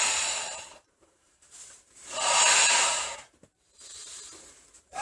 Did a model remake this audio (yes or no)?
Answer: yes